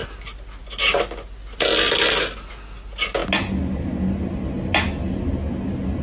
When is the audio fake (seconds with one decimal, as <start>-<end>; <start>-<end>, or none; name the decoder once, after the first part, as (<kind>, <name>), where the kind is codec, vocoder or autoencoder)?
none